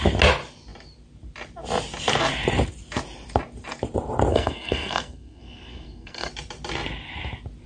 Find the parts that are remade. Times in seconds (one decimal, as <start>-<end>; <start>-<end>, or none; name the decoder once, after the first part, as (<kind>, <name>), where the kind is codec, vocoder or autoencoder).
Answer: 4.3-6.3 (codec, SNAC)